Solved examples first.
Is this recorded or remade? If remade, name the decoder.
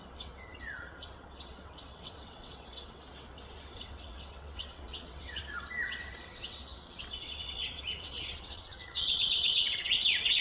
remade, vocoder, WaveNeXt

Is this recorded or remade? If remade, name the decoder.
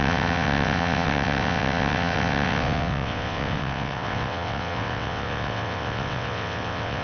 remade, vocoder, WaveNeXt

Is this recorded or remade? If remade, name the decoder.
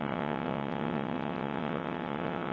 remade, vocoder, WaveNeXt